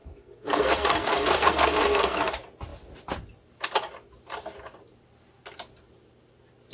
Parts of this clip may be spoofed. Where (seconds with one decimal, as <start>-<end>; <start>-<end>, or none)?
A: 0.0-2.3